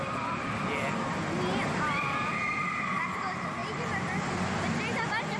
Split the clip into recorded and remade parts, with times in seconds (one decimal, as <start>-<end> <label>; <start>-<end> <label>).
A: 0.0-5.4 recorded